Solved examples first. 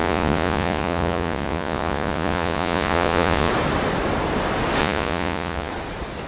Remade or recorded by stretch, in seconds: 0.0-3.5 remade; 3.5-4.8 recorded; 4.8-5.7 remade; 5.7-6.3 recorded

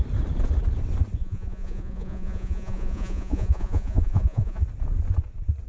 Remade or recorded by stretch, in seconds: 0.0-1.2 recorded; 1.2-4.6 remade; 4.6-5.7 recorded

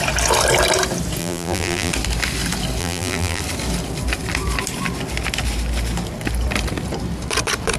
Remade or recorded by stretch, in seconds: 0.0-1.2 recorded; 1.2-1.9 remade; 1.9-2.8 recorded; 2.8-3.4 remade; 3.4-7.8 recorded

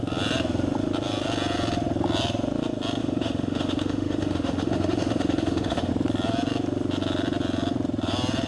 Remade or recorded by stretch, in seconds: 0.0-3.0 recorded; 3.0-5.9 remade; 5.9-8.5 recorded